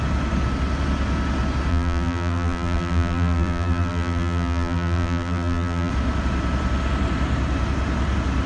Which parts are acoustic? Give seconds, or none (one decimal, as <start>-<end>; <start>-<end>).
0.0-1.7; 5.9-8.5